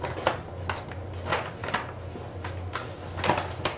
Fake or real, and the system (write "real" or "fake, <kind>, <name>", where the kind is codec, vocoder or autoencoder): real